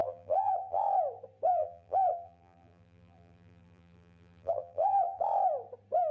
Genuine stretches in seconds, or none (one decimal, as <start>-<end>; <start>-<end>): 0.8-1.5; 5.2-6.1